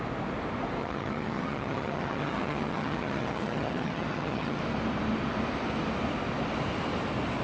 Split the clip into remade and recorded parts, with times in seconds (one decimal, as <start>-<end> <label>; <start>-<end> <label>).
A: 0.0-0.8 recorded; 0.8-4.6 remade; 4.6-7.4 recorded